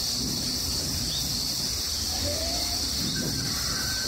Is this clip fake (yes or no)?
no